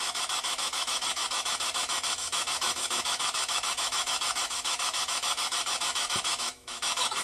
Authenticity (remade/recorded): remade